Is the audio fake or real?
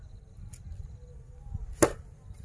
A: real